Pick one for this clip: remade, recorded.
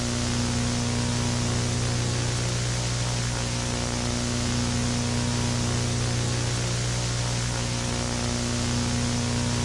recorded